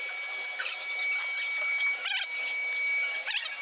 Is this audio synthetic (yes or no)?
no